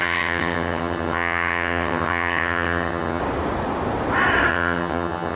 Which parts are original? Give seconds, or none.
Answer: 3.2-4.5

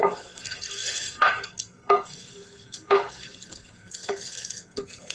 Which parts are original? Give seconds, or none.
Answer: none

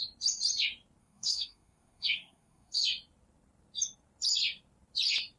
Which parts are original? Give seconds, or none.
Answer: 0.0-1.0; 2.8-5.4

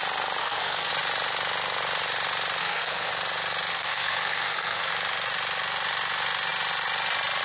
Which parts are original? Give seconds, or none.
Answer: 0.0-0.4; 0.9-2.6; 3.1-3.7; 4.9-7.4

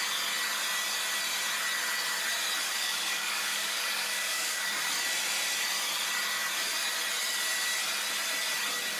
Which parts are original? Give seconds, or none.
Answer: 0.0-2.7; 4.8-9.0